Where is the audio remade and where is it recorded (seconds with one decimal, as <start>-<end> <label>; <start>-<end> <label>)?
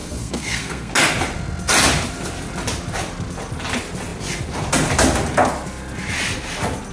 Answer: 0.0-0.9 remade; 0.9-6.9 recorded